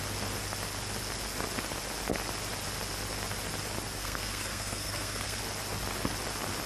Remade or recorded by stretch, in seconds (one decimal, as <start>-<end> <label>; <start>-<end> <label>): 0.0-4.0 recorded; 4.0-5.4 remade; 5.4-6.7 recorded